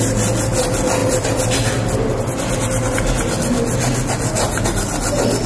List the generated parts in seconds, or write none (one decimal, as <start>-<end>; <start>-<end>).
none

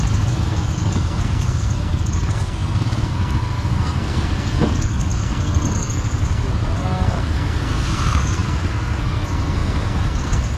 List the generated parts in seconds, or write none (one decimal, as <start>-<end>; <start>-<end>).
0.0-10.6